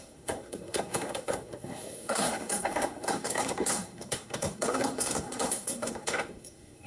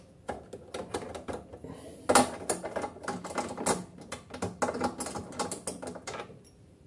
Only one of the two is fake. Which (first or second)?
first